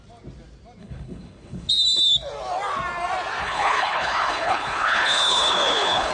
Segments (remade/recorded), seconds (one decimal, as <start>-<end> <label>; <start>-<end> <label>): 0.0-0.8 recorded; 0.8-1.7 remade; 1.7-3.4 recorded; 3.4-6.1 remade